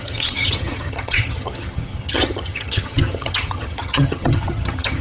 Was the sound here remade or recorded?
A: remade